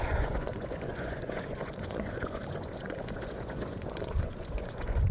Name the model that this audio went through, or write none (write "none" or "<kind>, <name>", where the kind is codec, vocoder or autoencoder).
vocoder, Vocos